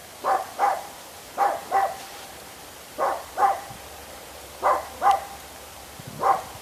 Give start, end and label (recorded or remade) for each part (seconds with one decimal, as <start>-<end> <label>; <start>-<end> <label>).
0.0-2.3 recorded; 2.3-6.6 remade